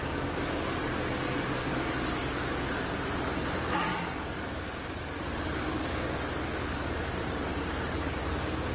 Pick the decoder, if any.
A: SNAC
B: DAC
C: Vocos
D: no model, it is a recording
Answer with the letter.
B